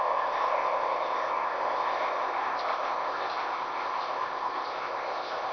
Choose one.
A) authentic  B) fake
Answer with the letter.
B